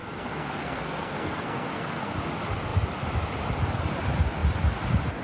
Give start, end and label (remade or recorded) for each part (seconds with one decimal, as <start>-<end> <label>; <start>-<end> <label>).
0.0-2.1 remade; 2.1-5.2 recorded